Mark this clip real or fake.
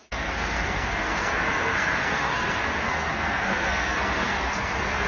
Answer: fake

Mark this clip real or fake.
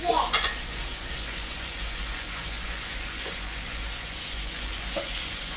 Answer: fake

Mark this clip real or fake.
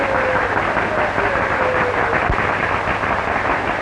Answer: fake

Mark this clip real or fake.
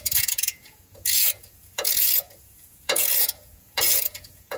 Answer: fake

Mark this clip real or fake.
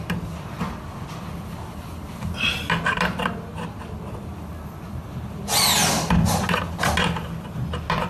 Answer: real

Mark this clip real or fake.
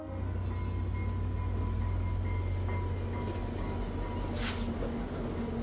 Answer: real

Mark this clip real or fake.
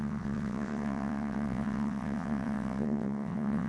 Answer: fake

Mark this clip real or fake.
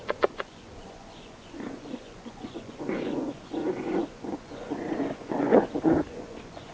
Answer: fake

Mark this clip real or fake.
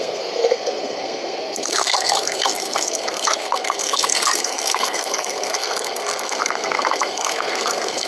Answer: fake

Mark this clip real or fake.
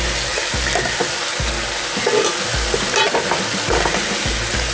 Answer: real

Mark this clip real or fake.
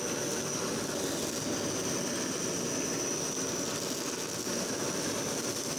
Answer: real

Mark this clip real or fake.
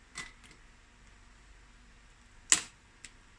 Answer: real